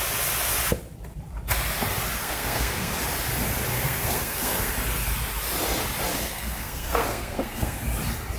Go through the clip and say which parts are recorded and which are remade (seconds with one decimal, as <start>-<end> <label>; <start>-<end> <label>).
0.0-2.2 recorded; 2.2-2.9 remade; 2.9-3.7 recorded; 3.7-4.7 remade; 4.7-6.1 recorded; 6.1-7.8 remade; 7.8-8.4 recorded